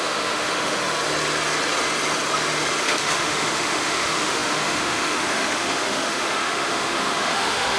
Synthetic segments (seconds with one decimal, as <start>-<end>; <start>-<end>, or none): 0.0-0.8; 2.8-7.8